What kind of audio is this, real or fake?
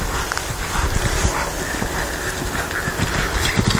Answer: real